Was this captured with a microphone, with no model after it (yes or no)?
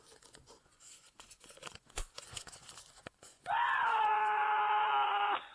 no